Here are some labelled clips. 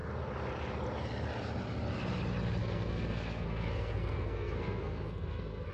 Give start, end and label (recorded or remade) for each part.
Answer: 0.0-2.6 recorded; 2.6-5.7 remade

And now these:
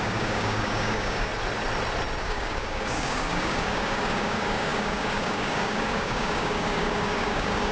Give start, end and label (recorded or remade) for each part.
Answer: 0.0-1.3 remade; 1.3-2.2 recorded; 2.2-7.7 remade

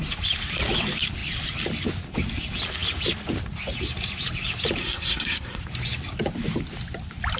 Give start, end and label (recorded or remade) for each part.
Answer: 0.0-4.8 recorded; 4.8-5.6 remade; 5.6-7.4 recorded

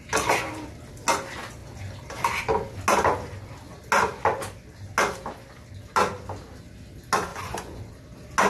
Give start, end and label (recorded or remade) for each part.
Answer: 0.0-7.3 recorded; 7.3-7.9 remade; 7.9-8.5 recorded

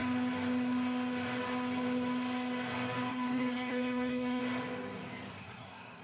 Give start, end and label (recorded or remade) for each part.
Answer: 0.0-3.1 recorded; 3.1-4.4 remade; 4.4-5.3 recorded; 5.3-6.0 remade

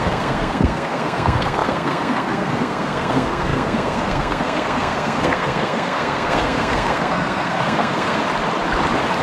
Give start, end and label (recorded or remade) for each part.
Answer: 0.0-8.2 remade; 8.2-9.2 recorded

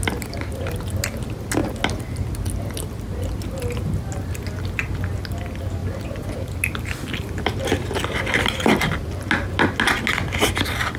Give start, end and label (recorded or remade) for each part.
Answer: 0.0-11.0 recorded

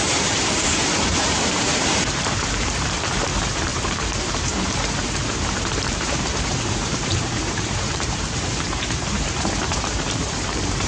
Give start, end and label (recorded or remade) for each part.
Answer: 0.0-10.9 remade